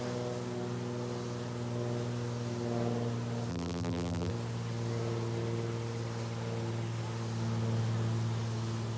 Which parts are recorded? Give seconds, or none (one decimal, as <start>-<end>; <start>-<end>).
0.0-3.5; 4.3-9.0